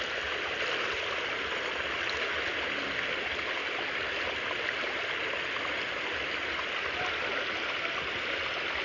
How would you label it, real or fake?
real